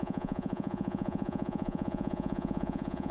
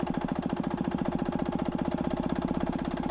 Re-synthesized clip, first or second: first